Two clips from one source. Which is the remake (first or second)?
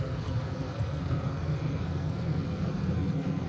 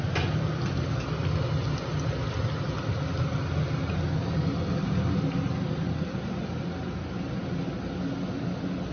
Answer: first